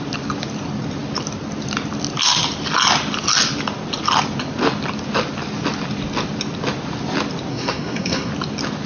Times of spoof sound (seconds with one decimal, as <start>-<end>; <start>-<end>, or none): 7.5-8.3